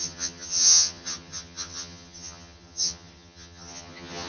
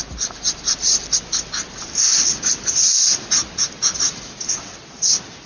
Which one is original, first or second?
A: second